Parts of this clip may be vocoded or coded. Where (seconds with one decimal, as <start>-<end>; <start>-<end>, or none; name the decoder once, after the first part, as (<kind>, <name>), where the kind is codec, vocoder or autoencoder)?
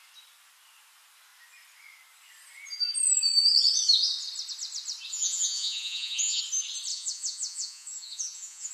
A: 5.1-6.4 (vocoder, Vocos); 6.9-8.7